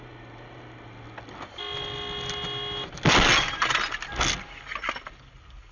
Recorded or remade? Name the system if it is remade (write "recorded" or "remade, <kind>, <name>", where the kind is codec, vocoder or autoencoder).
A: recorded